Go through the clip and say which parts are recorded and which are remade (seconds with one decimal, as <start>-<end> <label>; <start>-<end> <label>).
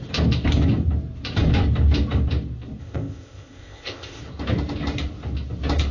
0.0-2.8 recorded; 2.8-4.2 remade; 4.2-5.9 recorded